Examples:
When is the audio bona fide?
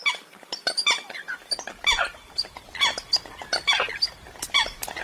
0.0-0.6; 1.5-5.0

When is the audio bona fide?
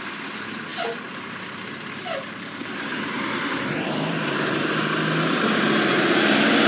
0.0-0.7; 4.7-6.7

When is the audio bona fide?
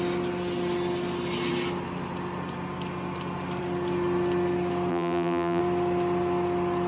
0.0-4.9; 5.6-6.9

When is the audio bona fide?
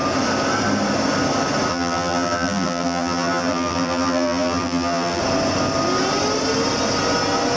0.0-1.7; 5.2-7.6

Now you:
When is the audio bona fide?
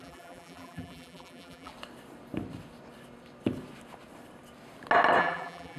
1.7-5.2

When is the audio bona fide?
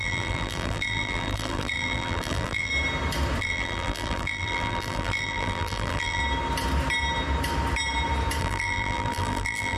2.7-3.4; 6.2-8.4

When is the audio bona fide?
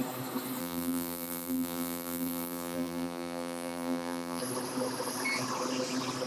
0.0-0.6; 4.4-6.3